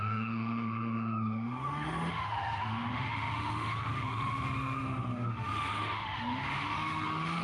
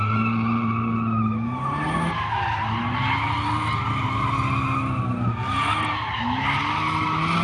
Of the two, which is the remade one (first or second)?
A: first